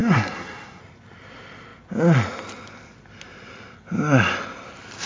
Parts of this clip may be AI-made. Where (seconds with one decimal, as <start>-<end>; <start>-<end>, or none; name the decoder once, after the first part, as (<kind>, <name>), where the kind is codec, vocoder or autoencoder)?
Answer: 0.0-0.8 (codec, SNAC)

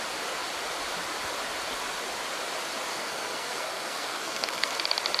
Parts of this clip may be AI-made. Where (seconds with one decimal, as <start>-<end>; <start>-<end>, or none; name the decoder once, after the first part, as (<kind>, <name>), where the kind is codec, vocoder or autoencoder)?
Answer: 2.9-4.8 (codec, SNAC)